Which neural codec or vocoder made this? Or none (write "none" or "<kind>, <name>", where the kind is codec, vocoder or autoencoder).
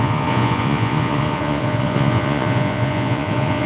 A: vocoder, Vocos